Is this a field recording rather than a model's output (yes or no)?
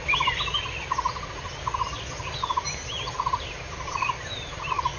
yes